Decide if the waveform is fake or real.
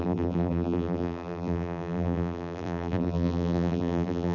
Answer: fake